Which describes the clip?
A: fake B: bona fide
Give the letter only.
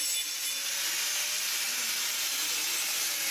B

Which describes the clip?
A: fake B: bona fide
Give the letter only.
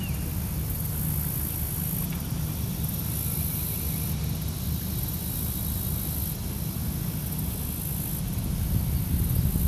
B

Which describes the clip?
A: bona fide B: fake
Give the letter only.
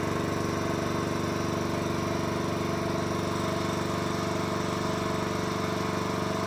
A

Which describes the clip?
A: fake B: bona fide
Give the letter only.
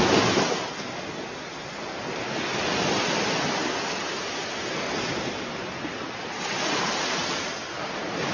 B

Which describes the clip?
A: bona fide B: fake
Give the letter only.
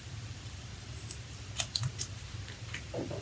B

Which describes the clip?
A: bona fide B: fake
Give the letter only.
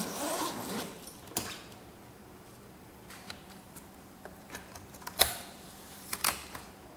B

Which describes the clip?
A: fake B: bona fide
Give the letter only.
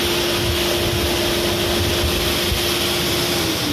B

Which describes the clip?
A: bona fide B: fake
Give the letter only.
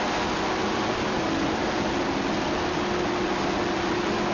A